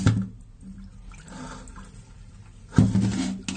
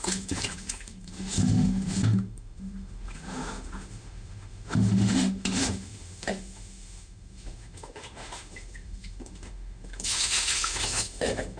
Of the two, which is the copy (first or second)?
second